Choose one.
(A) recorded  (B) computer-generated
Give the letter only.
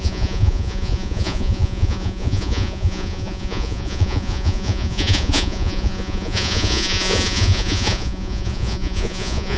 B